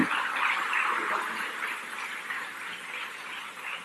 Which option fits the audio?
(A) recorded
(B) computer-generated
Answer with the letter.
A